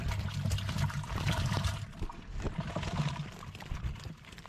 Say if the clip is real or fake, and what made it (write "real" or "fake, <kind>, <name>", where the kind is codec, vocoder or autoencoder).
real